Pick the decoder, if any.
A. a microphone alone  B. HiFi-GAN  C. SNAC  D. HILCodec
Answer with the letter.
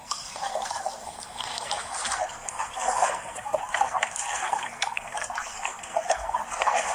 C